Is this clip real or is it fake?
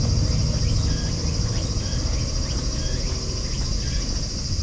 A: real